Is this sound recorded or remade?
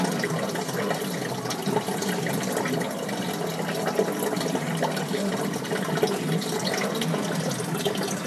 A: recorded